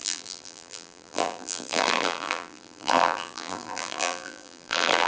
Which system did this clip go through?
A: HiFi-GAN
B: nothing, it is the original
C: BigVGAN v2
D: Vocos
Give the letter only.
C